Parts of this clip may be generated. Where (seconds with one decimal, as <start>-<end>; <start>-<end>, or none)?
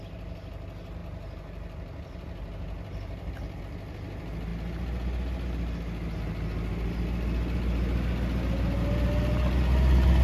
none